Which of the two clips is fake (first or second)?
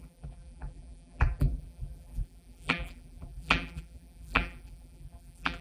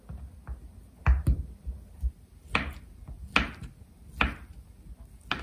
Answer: first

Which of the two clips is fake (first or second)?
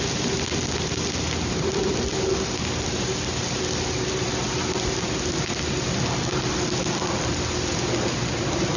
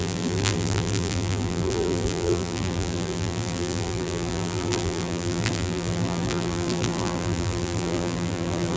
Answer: second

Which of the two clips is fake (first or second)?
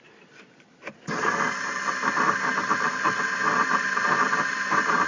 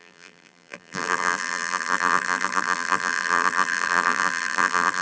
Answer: second